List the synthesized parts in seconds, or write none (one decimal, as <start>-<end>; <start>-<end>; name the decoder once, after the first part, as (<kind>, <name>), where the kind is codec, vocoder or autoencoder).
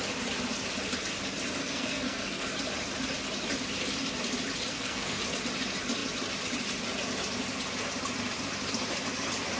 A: 1.6-2.5 (codec, SNAC); 4.7-5.2